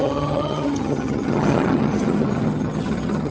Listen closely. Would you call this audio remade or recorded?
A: remade